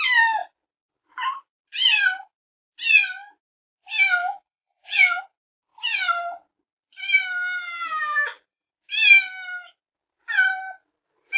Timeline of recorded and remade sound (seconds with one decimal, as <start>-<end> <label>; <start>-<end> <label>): 0.0-4.2 recorded; 4.2-5.2 remade; 5.2-7.6 recorded; 7.6-8.7 remade; 8.7-11.4 recorded